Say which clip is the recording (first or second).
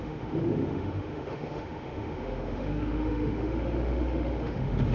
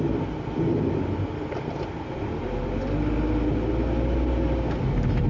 second